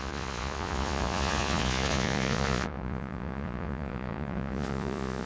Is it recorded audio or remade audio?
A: remade